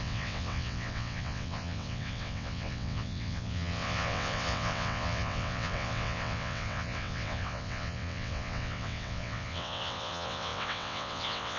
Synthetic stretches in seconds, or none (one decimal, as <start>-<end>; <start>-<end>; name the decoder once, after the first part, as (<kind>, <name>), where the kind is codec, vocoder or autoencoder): 0.0-11.6 (vocoder, WaveNeXt)